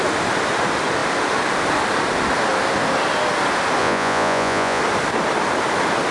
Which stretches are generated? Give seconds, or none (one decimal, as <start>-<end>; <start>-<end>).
3.8-4.8